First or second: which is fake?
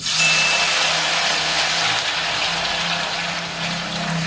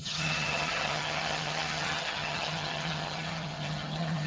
second